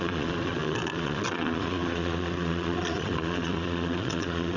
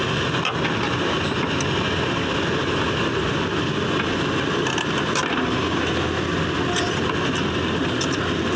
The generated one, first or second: first